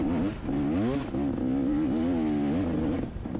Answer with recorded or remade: recorded